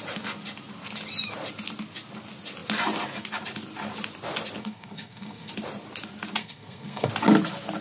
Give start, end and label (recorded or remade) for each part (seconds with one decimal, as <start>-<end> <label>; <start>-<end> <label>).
0.0-4.6 recorded; 4.6-5.5 remade; 5.5-6.4 recorded; 6.4-7.1 remade; 7.1-7.8 recorded